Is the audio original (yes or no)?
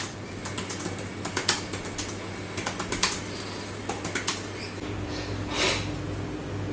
yes